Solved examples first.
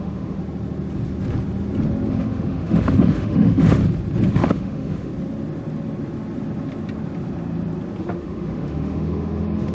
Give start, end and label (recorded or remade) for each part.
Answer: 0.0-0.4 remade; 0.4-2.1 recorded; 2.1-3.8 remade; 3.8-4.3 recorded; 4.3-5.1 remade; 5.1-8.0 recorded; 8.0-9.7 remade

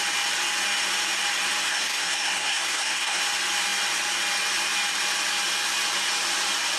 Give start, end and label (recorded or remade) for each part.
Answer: 0.0-1.7 recorded; 1.7-3.2 remade; 3.2-6.8 recorded

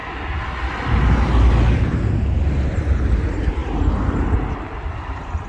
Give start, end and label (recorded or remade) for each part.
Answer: 0.0-5.5 recorded

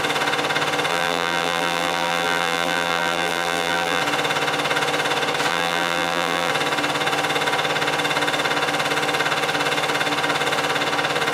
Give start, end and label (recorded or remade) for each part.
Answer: 0.0-0.9 recorded; 0.9-4.0 remade; 4.0-5.5 recorded; 5.5-6.5 remade; 6.5-11.3 recorded